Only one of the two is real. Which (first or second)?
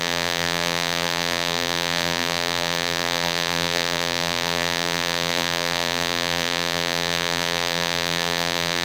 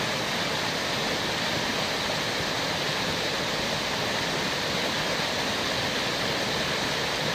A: second